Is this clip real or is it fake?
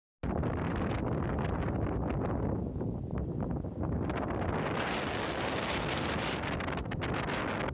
real